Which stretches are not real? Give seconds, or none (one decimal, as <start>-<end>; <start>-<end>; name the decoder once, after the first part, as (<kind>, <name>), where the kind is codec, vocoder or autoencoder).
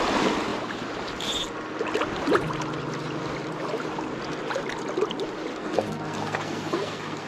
5.5-7.3 (codec, SNAC)